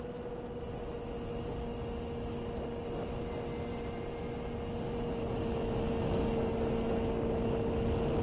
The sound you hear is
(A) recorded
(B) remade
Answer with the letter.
A